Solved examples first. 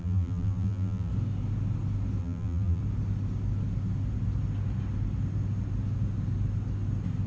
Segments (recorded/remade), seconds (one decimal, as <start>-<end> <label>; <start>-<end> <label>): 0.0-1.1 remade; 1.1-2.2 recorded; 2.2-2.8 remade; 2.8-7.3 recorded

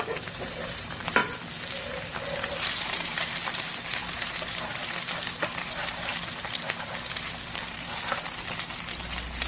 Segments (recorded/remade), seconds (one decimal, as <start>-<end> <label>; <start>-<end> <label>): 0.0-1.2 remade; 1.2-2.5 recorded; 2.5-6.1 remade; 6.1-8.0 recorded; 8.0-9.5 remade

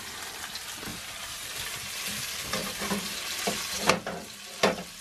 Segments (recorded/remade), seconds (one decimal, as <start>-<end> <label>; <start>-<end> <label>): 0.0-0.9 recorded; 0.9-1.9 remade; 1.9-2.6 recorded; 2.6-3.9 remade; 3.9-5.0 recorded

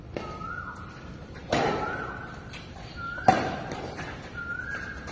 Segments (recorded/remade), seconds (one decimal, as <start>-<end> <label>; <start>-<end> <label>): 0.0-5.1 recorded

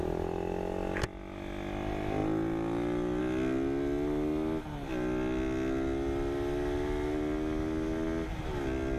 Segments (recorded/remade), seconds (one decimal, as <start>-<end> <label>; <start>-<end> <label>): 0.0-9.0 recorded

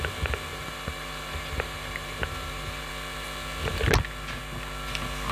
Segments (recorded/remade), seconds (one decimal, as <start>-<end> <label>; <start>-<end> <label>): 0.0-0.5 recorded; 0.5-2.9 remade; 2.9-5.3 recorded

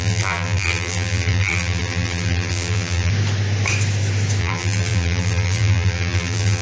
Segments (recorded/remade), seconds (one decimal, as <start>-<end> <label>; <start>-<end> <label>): 0.0-3.1 remade; 3.1-4.4 recorded; 4.4-6.6 remade

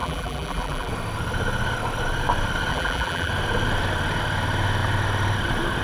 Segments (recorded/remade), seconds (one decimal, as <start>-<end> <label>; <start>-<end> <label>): 0.0-0.9 remade; 0.9-2.7 recorded; 2.7-3.3 remade; 3.3-5.8 recorded